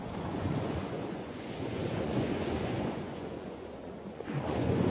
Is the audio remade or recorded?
remade